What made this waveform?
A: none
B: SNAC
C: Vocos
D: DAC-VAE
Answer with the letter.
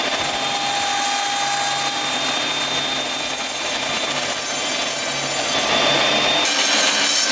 A